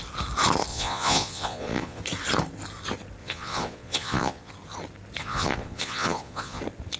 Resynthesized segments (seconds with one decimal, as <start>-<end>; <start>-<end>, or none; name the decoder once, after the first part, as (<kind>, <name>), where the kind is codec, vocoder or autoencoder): 0.7-2.0 (vocoder, Vocos); 3.2-4.5; 5.2-6.6